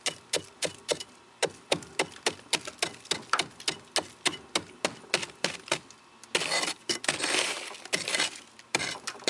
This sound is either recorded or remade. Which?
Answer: recorded